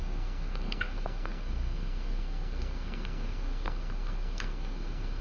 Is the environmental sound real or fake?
fake